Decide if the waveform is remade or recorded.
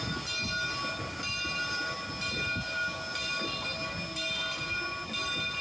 recorded